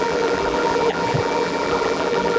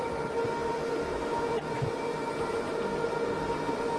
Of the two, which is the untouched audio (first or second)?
second